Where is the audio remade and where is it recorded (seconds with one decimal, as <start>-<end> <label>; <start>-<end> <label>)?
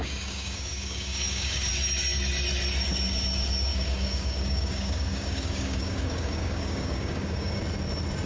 0.0-1.7 remade; 1.7-3.7 recorded; 3.7-7.6 remade; 7.6-8.3 recorded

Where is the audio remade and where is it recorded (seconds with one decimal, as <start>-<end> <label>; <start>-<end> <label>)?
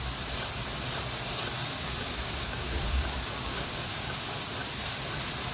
0.0-1.6 recorded; 1.6-4.3 remade; 4.3-5.5 recorded